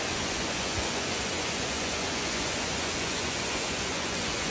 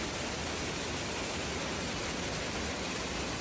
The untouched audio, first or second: second